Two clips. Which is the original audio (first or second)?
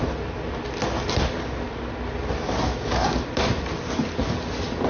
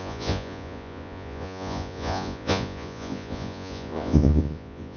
first